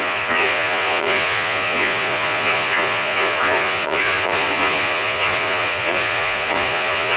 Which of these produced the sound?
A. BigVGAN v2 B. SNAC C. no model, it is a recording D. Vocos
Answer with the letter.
D